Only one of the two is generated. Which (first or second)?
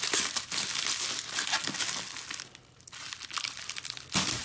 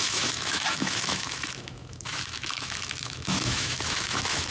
second